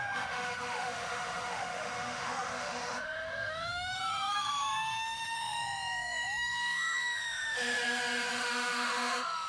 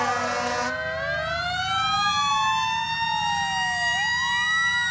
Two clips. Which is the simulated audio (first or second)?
first